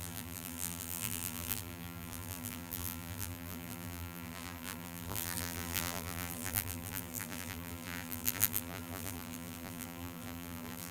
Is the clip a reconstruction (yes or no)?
yes